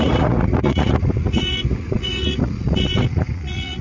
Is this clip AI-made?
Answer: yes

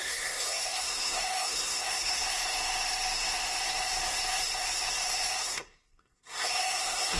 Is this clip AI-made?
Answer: yes